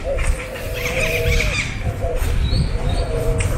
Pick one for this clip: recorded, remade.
remade